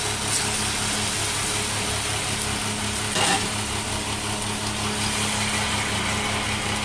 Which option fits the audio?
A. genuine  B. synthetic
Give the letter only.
A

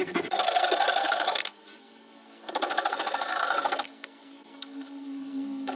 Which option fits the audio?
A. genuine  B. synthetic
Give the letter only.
B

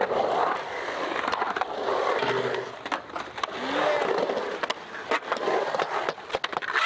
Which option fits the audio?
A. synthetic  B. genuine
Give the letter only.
B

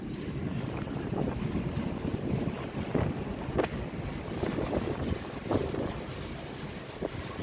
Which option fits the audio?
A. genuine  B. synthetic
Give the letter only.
A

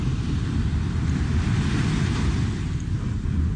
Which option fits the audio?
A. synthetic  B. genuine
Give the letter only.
A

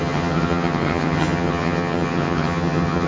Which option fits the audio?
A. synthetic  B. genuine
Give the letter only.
A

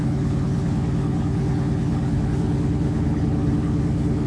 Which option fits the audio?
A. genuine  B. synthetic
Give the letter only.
B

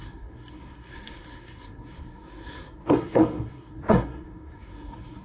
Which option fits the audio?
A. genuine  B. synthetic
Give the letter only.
B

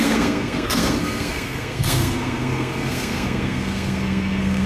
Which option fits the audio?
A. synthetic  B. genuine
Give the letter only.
A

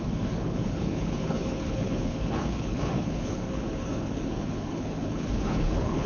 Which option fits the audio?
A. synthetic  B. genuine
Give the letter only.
A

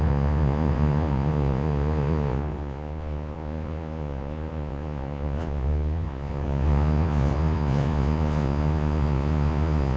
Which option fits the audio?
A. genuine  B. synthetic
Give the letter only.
B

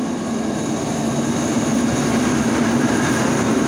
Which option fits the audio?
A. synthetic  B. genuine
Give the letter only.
B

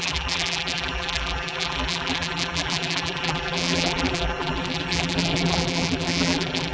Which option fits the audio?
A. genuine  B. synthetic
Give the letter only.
B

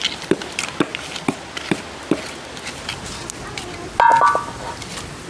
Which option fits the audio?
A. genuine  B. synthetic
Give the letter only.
A